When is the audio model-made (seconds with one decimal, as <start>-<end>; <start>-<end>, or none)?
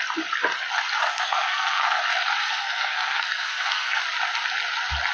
1.1-2.0; 2.4-4.0